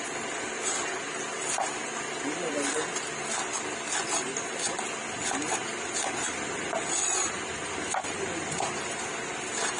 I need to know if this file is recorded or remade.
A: recorded